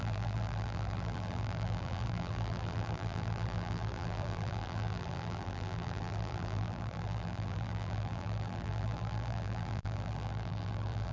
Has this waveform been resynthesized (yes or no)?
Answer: yes